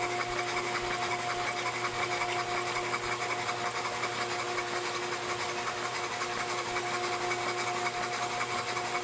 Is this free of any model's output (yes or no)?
yes